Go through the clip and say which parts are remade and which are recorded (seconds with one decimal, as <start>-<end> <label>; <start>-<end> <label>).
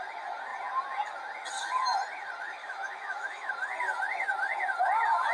0.0-2.6 recorded; 2.6-3.5 remade; 3.5-5.3 recorded